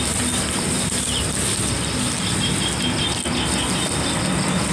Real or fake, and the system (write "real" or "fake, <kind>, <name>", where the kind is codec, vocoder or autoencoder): real